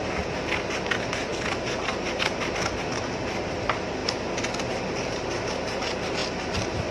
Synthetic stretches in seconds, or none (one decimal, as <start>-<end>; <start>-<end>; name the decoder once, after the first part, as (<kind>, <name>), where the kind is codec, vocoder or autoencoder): 6.2-6.9 (vocoder, BigVGAN v2)